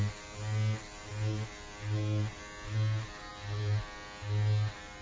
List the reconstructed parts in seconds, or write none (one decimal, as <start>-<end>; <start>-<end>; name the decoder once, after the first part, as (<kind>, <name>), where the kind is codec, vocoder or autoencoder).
none

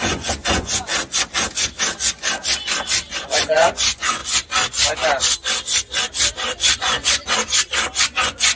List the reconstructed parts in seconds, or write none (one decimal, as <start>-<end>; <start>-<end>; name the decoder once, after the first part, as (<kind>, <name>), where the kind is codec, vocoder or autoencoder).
0.0-0.9 (vocoder, Vocos); 3.2-4.2; 6.8-7.4; 8.0-8.6

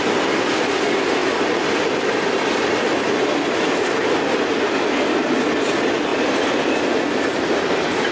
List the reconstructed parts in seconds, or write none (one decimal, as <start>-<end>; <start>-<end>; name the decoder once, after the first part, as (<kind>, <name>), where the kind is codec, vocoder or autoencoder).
none

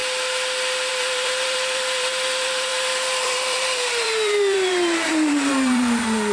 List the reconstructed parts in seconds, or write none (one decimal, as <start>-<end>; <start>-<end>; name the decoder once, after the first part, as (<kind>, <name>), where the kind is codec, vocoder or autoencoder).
0.9-6.3 (vocoder, BigVGAN v2)

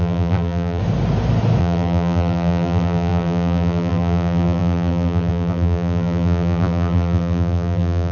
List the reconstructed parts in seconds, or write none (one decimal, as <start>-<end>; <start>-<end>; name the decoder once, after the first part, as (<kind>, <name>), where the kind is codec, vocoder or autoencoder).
0.0-0.8 (vocoder, BigVGAN v2); 1.6-8.1